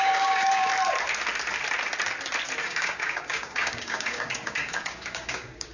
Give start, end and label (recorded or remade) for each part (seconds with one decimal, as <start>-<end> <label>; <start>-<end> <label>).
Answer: 0.0-0.7 remade; 0.7-2.6 recorded; 2.6-5.7 remade